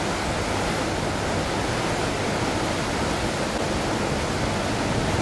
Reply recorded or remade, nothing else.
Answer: recorded